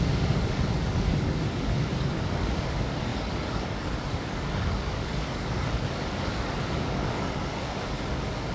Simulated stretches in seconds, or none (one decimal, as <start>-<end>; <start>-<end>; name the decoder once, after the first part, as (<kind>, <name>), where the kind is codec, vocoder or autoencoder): 0.0-8.5 (codec, DAC)